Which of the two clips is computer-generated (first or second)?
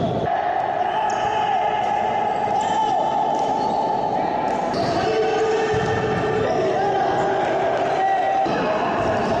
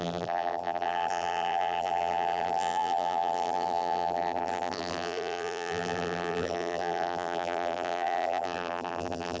second